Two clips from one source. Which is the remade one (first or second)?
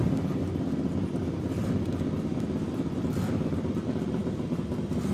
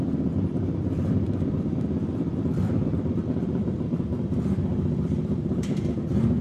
second